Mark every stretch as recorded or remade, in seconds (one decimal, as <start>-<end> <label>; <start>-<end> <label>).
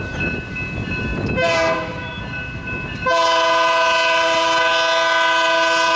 0.0-6.0 recorded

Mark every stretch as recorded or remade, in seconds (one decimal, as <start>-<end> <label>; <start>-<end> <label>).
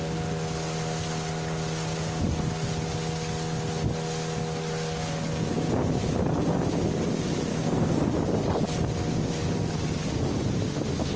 0.0-7.5 recorded; 7.5-8.1 remade; 8.1-11.2 recorded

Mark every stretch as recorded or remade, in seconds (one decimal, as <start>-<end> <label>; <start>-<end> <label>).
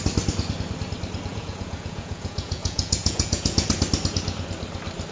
0.0-1.3 recorded; 1.3-3.7 remade; 3.7-5.1 recorded